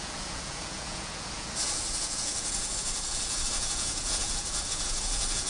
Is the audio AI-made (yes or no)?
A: yes